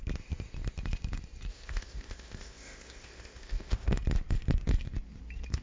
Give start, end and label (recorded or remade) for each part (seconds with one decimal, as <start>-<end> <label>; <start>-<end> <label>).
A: 0.0-1.5 recorded; 1.5-3.9 remade; 3.9-5.6 recorded